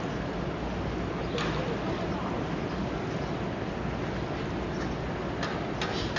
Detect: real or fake real